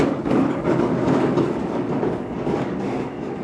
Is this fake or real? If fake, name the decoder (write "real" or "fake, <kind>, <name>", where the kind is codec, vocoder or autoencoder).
fake, codec, DAC